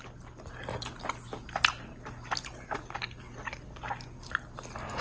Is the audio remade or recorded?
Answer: recorded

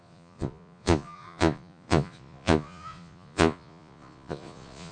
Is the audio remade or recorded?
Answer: remade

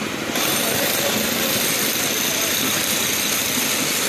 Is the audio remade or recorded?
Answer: recorded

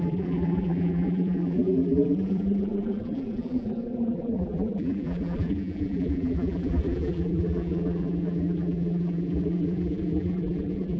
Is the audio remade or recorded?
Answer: remade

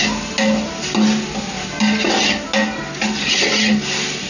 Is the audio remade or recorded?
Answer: recorded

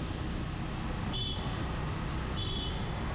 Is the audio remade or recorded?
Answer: recorded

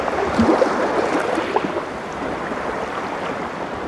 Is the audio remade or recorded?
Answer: recorded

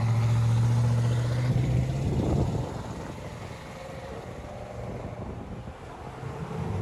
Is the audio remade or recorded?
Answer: recorded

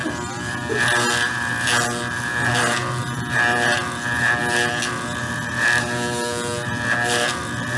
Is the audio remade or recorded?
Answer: recorded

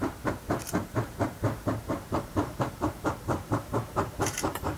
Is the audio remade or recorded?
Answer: remade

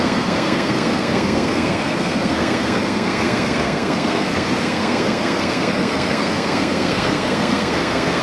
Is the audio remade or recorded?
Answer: remade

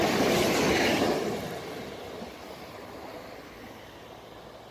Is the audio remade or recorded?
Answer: recorded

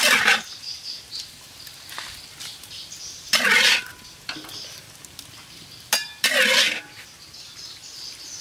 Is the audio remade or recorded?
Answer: remade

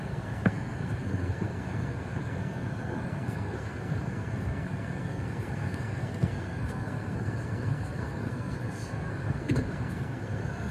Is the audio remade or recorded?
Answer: remade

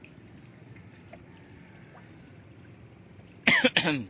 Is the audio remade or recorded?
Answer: recorded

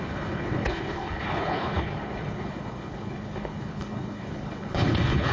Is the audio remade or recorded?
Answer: remade